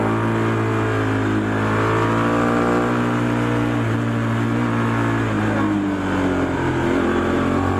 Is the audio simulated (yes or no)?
no